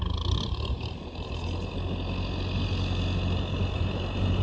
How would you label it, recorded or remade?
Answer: recorded